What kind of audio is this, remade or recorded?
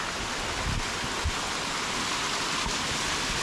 recorded